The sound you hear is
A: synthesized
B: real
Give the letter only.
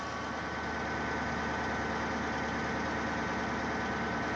B